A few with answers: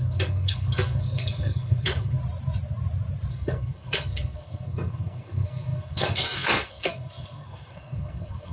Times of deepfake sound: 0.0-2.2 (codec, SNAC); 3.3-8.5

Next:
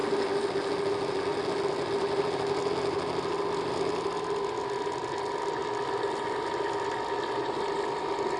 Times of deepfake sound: none

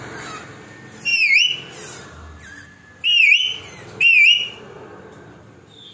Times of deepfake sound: none

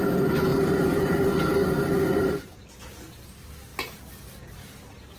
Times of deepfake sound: 0.5-1.2 (vocoder, BigVGAN v2); 1.6-2.5

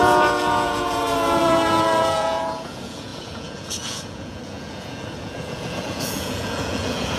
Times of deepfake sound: 0.0-7.2 (vocoder, Vocos)

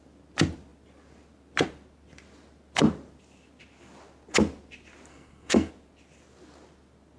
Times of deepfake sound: 5.1-5.7 (codec, SNAC)